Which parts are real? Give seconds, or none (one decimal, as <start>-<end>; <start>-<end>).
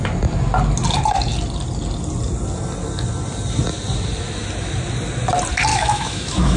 0.0-5.7